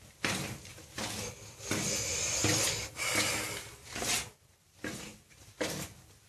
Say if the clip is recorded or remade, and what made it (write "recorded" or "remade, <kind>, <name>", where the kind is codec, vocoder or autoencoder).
recorded